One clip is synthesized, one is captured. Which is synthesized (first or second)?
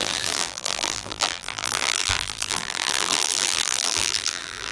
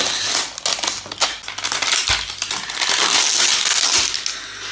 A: first